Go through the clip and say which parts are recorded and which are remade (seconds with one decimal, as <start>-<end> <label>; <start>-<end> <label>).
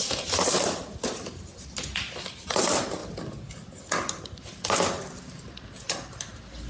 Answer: 0.0-6.7 recorded